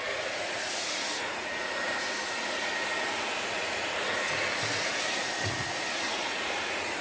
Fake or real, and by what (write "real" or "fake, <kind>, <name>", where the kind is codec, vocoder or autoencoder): fake, vocoder, Vocos